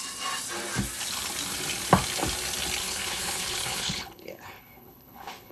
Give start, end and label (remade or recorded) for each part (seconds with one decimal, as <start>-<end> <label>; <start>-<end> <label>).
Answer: 0.0-2.8 recorded; 2.8-5.5 remade